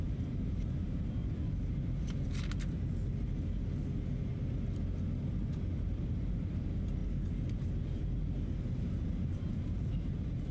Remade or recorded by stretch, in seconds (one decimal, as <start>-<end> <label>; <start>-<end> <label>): 0.0-1.2 remade; 1.2-5.8 recorded; 5.8-7.0 remade; 7.0-8.7 recorded; 8.7-10.5 remade